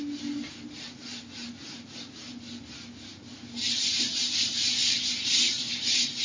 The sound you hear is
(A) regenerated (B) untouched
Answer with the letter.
B